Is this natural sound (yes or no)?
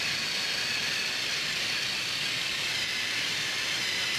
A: yes